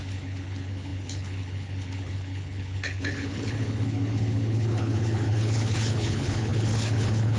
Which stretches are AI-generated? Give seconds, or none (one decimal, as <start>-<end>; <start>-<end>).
0.0-7.4